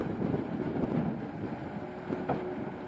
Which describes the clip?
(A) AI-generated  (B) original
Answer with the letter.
B